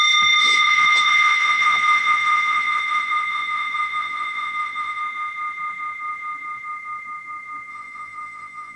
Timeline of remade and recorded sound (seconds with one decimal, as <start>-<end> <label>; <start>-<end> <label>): 0.0-0.4 recorded; 0.4-5.0 remade; 5.0-7.7 recorded; 7.7-8.8 remade